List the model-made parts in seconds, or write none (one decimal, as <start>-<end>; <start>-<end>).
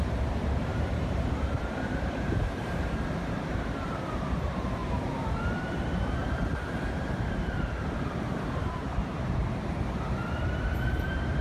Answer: 0.0-11.4